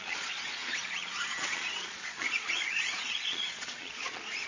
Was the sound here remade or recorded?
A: remade